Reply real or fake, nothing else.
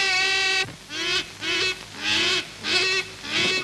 real